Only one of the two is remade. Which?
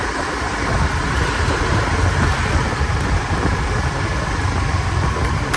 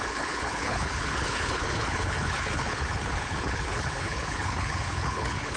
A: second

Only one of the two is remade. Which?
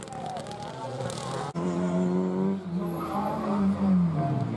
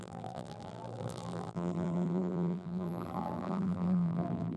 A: second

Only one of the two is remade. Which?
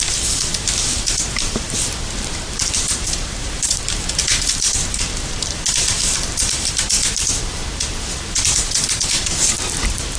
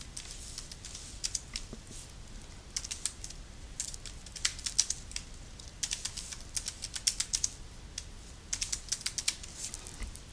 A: first